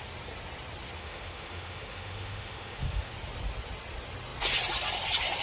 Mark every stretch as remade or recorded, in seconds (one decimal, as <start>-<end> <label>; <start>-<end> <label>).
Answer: 0.0-1.0 recorded; 1.0-3.1 remade; 3.1-5.4 recorded